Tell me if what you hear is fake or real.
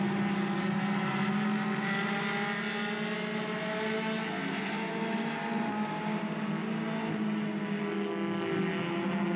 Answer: real